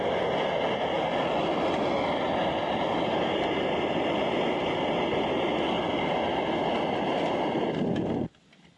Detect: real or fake real